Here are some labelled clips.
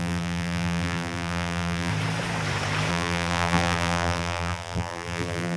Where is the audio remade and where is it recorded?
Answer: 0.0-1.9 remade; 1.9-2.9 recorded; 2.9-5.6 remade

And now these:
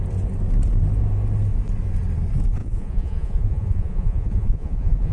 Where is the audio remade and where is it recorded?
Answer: 0.0-2.6 recorded; 2.6-5.1 remade